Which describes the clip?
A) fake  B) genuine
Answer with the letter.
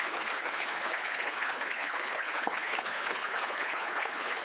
A